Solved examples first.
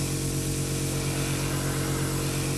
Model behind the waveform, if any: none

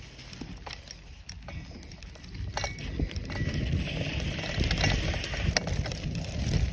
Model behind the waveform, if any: none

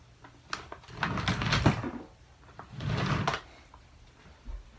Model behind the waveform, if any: none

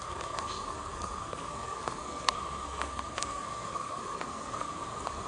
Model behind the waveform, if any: codec, SNAC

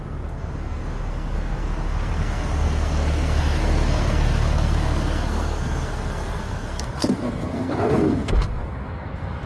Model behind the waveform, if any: codec, SNAC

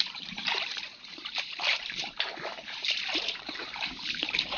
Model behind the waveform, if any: vocoder, BigVGAN v2